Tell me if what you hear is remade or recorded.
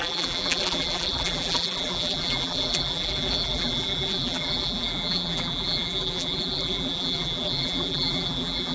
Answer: remade